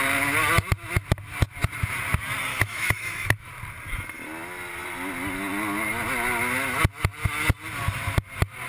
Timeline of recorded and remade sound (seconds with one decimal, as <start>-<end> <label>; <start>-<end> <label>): 0.0-2.5 recorded; 2.5-3.5 remade; 3.5-8.7 recorded